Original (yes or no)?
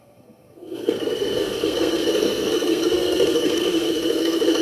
no